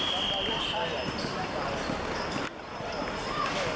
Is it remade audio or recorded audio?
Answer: recorded